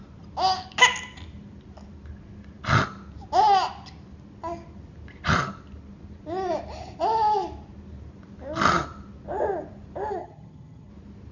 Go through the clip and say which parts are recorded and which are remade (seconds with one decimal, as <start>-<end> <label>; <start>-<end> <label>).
0.0-10.2 recorded; 10.2-10.9 remade; 10.9-11.3 recorded